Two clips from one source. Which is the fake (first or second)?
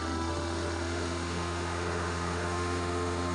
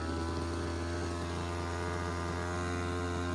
first